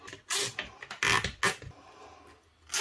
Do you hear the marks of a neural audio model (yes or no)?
no